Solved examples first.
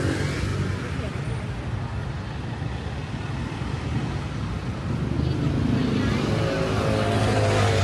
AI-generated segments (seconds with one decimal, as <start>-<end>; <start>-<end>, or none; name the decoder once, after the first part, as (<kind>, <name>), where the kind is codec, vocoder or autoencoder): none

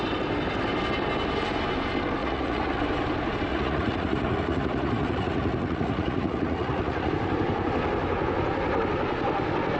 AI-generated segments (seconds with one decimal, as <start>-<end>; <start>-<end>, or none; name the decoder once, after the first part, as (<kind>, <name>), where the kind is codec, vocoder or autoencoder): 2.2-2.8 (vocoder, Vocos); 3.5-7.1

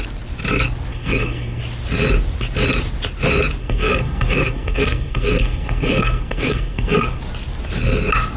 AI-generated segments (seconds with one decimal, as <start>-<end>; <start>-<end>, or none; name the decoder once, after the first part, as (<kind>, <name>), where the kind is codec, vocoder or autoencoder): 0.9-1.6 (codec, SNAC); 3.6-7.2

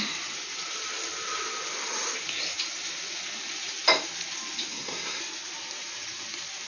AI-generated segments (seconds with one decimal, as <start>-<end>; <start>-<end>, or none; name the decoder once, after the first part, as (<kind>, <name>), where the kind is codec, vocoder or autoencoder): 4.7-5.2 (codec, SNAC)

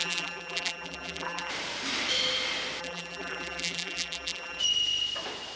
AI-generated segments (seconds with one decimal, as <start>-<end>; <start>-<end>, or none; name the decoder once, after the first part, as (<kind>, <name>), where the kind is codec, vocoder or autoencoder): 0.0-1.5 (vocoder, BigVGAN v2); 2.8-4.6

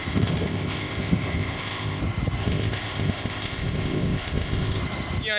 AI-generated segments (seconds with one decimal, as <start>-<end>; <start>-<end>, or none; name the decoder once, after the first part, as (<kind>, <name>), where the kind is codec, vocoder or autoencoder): 0.0-2.0 (codec, ZipCodec); 2.4-4.8